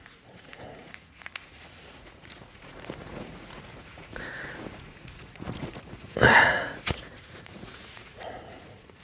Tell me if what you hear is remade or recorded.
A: remade